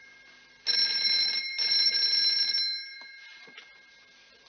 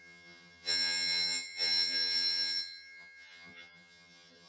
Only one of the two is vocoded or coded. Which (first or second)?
second